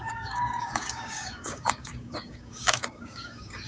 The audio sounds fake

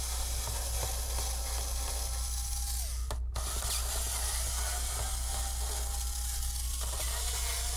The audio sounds real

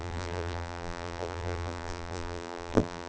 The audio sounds fake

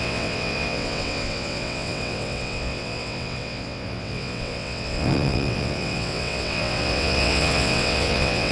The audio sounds fake